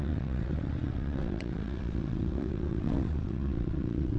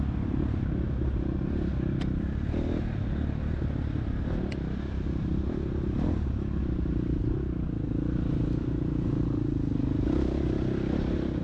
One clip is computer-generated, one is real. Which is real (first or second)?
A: second